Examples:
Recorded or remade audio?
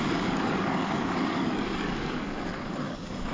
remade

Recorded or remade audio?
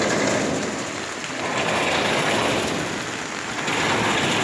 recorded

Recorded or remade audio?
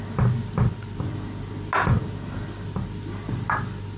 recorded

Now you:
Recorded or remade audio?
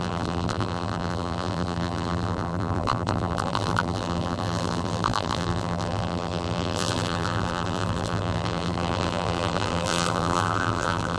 remade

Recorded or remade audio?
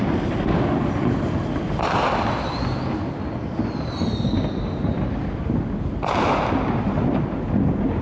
recorded